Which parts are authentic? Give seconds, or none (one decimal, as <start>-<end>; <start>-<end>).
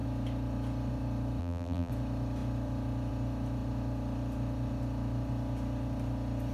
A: 0.0-1.4; 1.9-6.5